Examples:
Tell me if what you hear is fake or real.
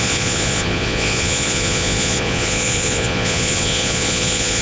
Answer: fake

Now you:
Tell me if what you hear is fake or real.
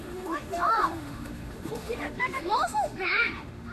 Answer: fake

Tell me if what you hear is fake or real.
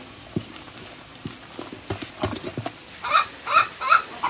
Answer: real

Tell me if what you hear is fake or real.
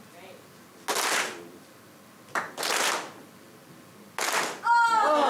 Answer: real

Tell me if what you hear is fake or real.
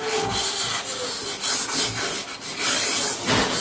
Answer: real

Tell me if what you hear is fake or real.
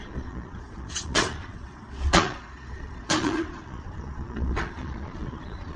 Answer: fake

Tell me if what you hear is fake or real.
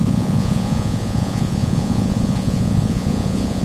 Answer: fake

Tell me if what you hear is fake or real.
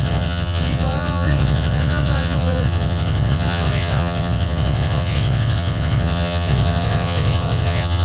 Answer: fake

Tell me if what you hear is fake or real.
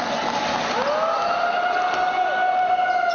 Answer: real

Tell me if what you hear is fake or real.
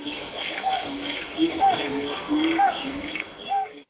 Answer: fake